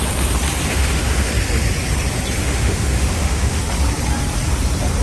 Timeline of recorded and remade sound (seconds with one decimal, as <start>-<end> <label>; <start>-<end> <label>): 0.0-0.7 recorded; 0.7-1.3 remade; 1.3-2.4 recorded; 2.4-3.6 remade; 3.6-5.0 recorded